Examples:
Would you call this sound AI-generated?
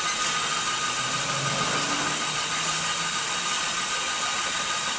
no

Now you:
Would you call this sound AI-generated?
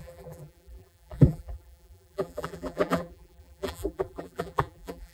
yes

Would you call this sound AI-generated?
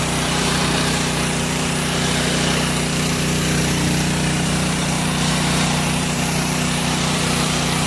yes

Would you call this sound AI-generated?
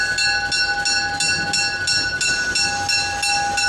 no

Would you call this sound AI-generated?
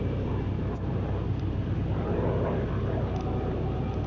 no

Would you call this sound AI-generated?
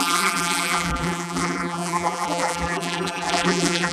yes